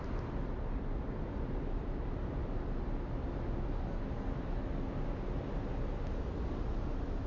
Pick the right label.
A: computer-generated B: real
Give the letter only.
B